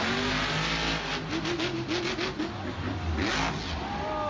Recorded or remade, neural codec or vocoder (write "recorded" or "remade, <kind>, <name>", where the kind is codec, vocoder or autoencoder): recorded